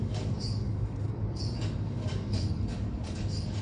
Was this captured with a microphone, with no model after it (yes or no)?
no